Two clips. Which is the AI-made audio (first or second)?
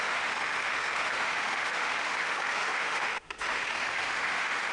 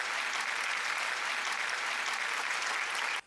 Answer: first